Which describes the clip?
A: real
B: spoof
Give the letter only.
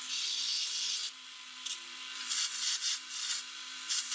B